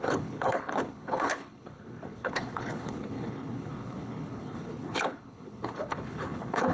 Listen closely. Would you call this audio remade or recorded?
remade